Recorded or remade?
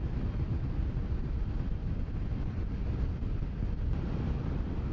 recorded